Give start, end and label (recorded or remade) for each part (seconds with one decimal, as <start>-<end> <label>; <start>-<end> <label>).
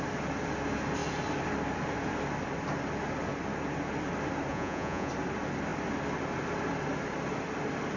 0.0-4.5 recorded; 4.5-5.1 remade; 5.1-8.0 recorded